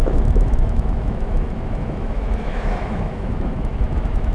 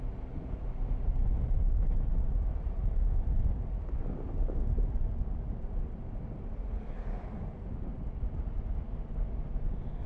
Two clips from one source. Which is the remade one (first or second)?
first